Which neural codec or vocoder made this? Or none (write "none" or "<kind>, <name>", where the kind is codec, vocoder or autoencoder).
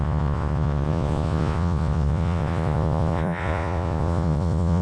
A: vocoder, Vocos